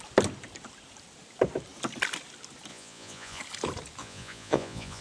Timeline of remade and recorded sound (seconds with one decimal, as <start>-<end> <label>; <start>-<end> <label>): 0.0-2.7 recorded; 2.7-3.4 remade; 3.4-4.0 recorded; 4.0-5.0 remade